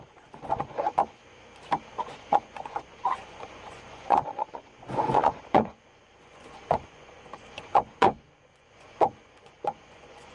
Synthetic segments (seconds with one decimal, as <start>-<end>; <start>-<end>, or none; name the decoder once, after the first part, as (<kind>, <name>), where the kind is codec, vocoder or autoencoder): 0.0-1.0 (vocoder, Vocos); 1.9-10.3